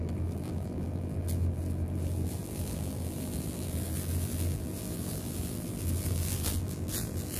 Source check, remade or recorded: remade